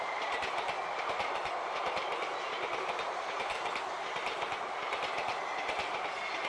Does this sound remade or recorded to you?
recorded